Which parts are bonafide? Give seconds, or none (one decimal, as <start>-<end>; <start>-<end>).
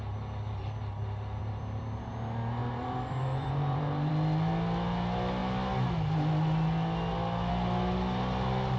0.0-1.4; 2.1-2.6; 4.1-8.8